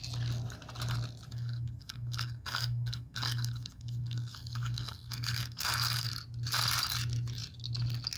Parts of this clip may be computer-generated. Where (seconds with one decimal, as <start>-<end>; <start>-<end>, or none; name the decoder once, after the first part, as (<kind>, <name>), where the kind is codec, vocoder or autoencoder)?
1.3-6.1 (codec, SNAC)